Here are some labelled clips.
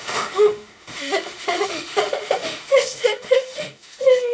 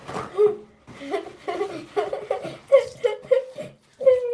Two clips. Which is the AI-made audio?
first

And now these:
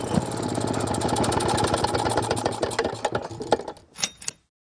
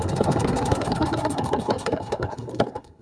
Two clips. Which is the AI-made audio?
second